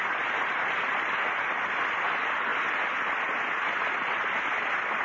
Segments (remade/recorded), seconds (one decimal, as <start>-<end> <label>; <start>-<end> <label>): 0.0-5.0 recorded